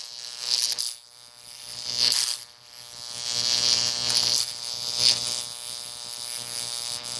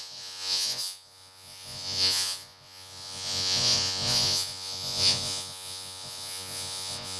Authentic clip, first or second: first